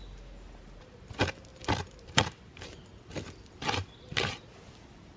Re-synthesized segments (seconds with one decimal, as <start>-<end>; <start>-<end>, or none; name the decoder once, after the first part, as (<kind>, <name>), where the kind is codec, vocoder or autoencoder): none